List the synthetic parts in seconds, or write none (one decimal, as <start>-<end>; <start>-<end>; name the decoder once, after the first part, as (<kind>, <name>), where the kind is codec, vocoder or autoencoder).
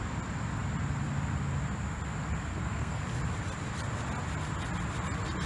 2.5-3.0 (codec, SNAC)